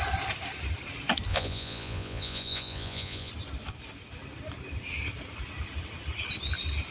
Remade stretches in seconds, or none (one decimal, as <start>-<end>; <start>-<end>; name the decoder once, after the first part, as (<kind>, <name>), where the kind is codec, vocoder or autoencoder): 1.3-3.3 (vocoder, Vocos)